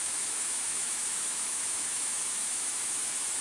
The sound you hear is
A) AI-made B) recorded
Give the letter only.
A